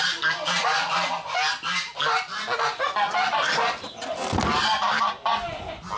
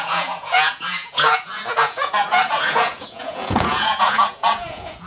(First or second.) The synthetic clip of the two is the second